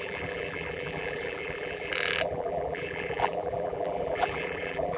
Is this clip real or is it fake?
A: fake